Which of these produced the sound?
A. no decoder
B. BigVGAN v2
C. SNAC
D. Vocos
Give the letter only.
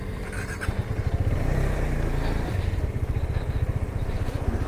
B